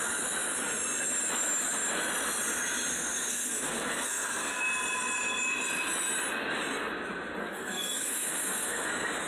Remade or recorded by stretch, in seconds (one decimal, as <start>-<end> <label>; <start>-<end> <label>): 0.0-2.9 recorded; 2.9-4.6 remade; 4.6-7.4 recorded; 7.4-8.9 remade; 8.9-9.3 recorded